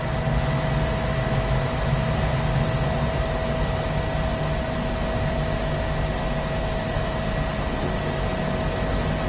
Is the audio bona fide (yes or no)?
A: yes